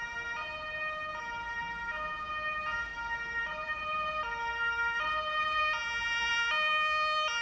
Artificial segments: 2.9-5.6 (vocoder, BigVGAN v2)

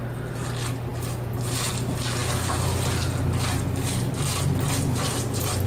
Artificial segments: 0.9-1.7 (vocoder, BigVGAN v2); 2.2-5.2

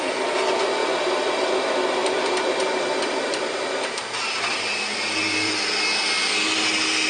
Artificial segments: 0.8-1.5 (vocoder, BigVGAN v2); 2.0-5.5

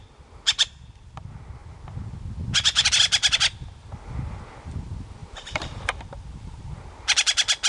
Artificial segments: 5.2-6.6 (vocoder, BigVGAN v2)

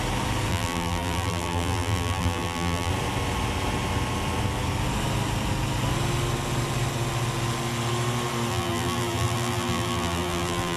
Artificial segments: 0.5-2.9 (vocoder, BigVGAN v2); 8.5-10.8

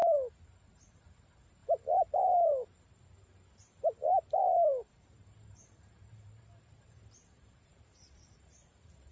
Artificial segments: 0.0-1.6 (vocoder, BigVGAN v2); 2.1-9.1

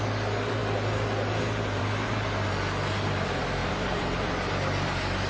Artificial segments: 3.6-4.3 (vocoder, BigVGAN v2)

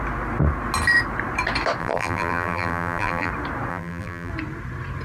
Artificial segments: 1.8-3.3 (vocoder, BigVGAN v2); 3.7-4.3